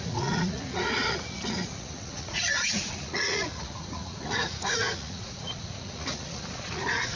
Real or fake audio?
fake